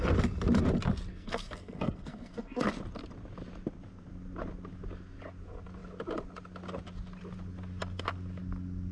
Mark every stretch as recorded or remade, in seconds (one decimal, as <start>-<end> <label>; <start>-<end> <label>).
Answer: 0.0-1.1 recorded; 1.1-2.7 remade; 2.7-8.9 recorded